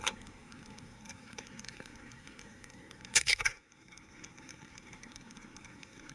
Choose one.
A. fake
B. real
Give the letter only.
A